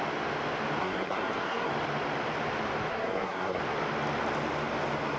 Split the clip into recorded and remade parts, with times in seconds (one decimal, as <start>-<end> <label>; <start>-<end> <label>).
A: 0.0-0.8 recorded; 0.8-1.7 remade; 1.7-2.9 recorded; 2.9-3.6 remade; 3.6-5.2 recorded